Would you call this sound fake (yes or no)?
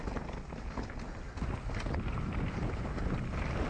no